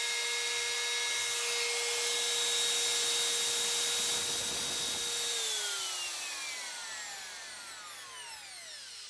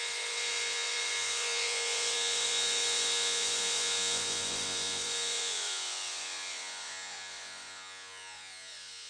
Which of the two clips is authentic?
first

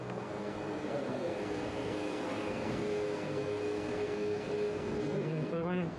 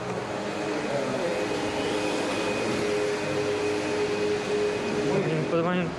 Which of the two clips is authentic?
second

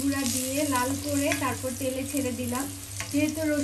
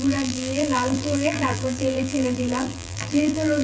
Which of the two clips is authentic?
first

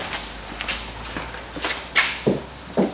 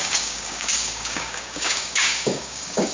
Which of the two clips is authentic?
first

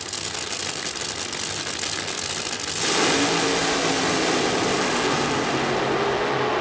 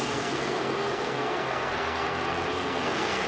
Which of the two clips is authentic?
first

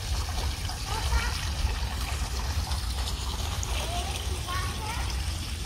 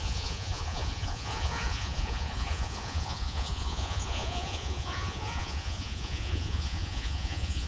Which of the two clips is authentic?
first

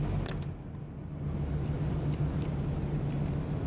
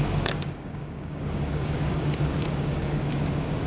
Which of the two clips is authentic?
first